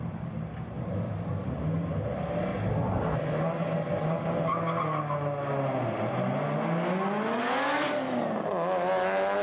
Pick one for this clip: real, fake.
real